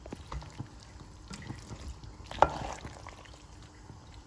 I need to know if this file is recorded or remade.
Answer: recorded